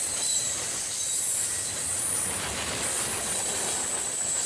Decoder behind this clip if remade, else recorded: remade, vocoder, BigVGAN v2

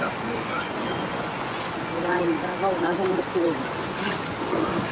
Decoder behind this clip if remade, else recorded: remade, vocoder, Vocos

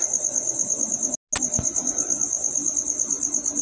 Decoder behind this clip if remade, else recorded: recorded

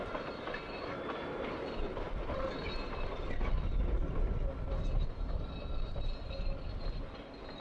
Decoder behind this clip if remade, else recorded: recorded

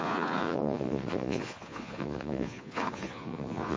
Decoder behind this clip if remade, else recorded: remade, vocoder, Vocos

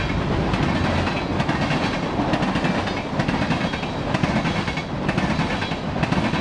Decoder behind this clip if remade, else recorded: recorded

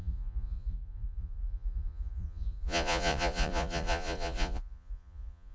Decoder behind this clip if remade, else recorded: remade, vocoder, Vocos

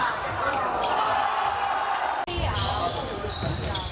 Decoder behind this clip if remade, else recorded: recorded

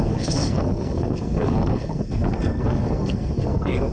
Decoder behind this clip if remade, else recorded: remade, codec, SNAC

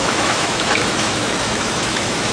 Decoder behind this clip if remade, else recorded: remade, autoencoder, DAC-VAE